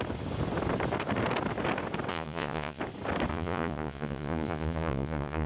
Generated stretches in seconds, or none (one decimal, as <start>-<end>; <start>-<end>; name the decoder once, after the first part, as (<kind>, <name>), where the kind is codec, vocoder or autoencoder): 2.1-2.8 (vocoder, Vocos); 3.3-5.5

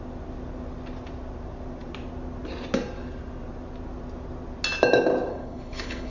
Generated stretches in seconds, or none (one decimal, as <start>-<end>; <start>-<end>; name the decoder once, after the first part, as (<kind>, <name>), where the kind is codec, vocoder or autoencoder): 5.3-6.1 (codec, HILCodec)

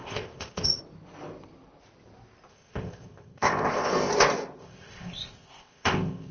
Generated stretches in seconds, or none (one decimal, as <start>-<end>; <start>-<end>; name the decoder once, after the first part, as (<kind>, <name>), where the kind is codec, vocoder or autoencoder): 0.0-0.8 (codec, ZipCodec); 2.5-4.1; 4.6-6.3

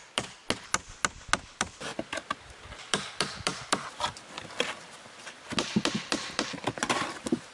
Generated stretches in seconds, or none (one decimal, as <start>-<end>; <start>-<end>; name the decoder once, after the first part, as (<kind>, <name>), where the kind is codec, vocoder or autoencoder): 0.0-0.4 (vocoder, BigVGAN v2); 1.5-1.9; 2.5-7.5

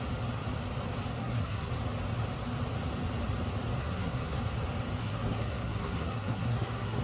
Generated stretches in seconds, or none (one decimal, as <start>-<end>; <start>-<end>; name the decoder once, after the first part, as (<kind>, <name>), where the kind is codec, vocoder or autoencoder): 1.2-1.7 (codec, SNAC); 3.8-4.4; 5.0-7.0